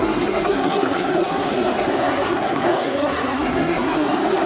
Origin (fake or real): fake